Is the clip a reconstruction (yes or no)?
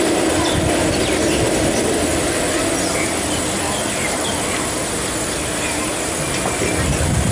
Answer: no